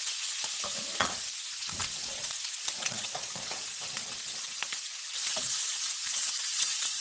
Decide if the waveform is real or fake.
fake